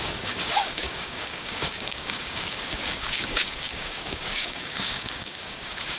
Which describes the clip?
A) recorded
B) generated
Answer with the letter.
B